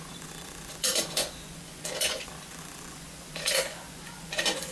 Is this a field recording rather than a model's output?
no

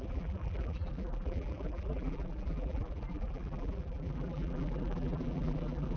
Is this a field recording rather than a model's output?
no